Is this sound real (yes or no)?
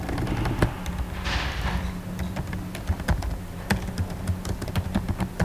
yes